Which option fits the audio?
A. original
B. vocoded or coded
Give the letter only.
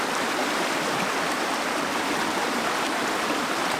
B